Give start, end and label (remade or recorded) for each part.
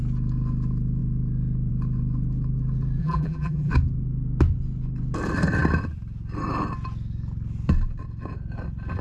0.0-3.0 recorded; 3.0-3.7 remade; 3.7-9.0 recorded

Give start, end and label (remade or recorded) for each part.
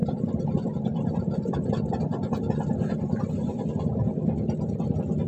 0.0-2.4 remade; 2.4-5.3 recorded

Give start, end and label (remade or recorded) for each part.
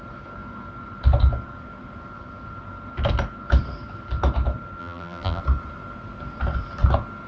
0.0-4.8 recorded; 4.8-5.4 remade; 5.4-7.3 recorded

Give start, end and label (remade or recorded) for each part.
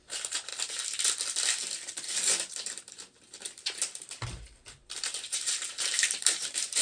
0.0-0.5 remade; 0.5-1.9 recorded; 1.9-6.8 remade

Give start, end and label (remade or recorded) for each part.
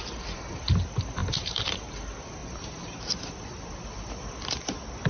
0.0-1.2 recorded; 1.2-1.9 remade; 1.9-2.4 recorded; 2.4-3.0 remade; 3.0-5.1 recorded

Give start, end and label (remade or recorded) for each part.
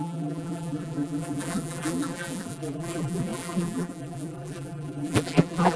0.0-5.8 remade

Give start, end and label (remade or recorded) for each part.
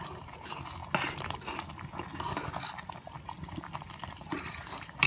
0.0-0.8 remade; 0.8-3.9 recorded; 3.9-5.1 remade